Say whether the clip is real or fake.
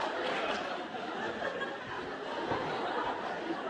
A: real